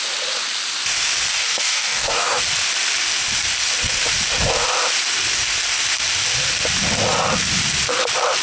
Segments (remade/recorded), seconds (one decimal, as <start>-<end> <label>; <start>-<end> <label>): 0.0-1.3 recorded; 1.3-2.4 remade; 2.4-8.4 recorded

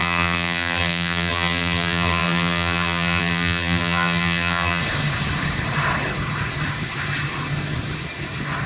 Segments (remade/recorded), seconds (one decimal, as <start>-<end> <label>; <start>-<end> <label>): 0.0-4.8 remade; 4.8-8.7 recorded

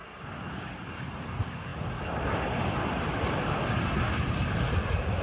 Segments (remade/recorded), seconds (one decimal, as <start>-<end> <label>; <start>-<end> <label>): 0.0-0.9 remade; 0.9-5.2 recorded

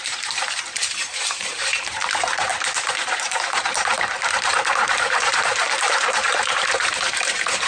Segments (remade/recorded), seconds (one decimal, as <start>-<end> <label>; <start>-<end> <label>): 0.0-7.7 remade

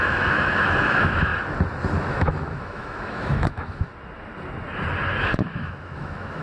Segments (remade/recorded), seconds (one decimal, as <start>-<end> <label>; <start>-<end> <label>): 0.0-1.3 remade; 1.3-2.1 recorded; 2.1-3.9 remade; 3.9-5.3 recorded; 5.3-6.4 remade

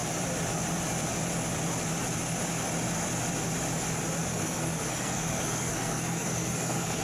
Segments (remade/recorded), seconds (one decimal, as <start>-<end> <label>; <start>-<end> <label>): 0.0-4.2 recorded; 4.2-7.0 remade